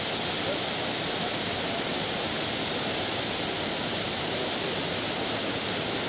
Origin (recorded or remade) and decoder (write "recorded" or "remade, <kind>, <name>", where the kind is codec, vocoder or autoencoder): recorded